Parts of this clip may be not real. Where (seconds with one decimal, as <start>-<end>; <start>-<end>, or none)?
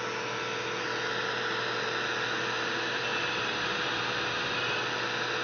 none